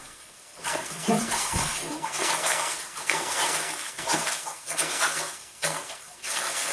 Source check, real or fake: fake